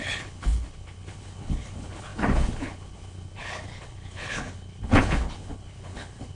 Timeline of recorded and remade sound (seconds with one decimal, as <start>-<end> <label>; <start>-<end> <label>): 0.0-6.3 remade